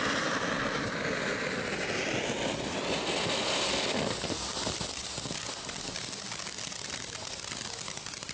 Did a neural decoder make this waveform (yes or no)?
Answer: no